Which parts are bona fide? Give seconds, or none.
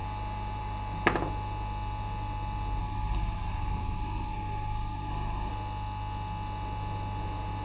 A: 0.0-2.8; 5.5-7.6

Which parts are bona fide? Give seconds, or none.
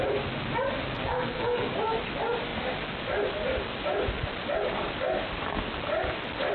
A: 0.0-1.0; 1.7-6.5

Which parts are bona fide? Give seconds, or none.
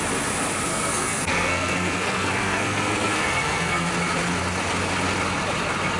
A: 0.0-0.7; 3.9-6.0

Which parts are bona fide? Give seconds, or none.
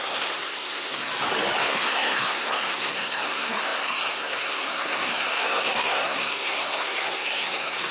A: 1.1-1.6